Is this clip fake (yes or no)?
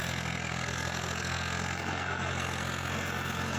yes